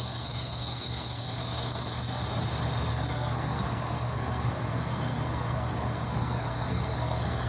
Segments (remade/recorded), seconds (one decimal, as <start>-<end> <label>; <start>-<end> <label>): 0.0-2.2 remade; 2.2-2.9 recorded; 2.9-7.5 remade

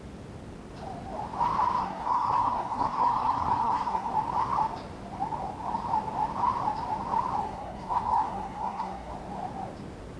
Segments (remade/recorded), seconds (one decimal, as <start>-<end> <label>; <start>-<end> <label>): 0.0-1.8 recorded; 1.8-4.1 remade; 4.1-7.4 recorded; 7.4-9.1 remade; 9.1-10.2 recorded